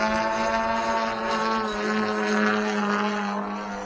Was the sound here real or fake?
real